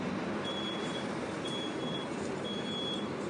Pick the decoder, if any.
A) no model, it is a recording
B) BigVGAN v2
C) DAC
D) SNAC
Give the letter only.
B